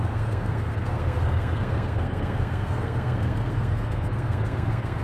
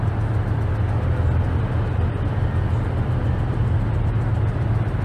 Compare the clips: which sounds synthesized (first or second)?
first